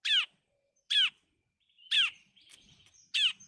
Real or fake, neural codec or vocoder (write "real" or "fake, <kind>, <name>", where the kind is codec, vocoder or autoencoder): real